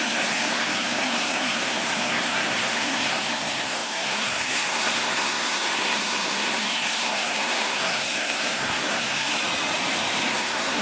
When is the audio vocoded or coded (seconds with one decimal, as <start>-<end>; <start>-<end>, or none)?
0.0-9.4; 10.3-10.8